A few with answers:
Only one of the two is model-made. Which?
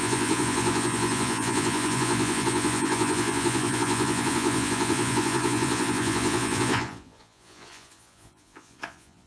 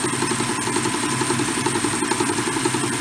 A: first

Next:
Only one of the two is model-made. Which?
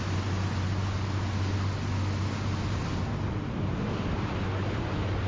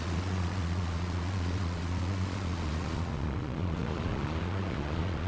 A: second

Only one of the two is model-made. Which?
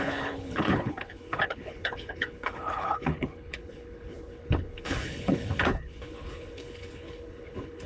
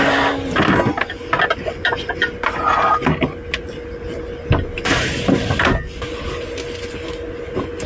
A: first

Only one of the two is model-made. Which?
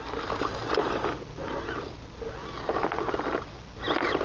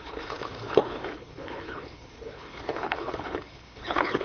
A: second